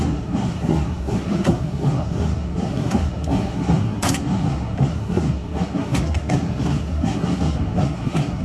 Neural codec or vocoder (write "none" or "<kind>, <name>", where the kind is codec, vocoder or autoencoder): codec, SNAC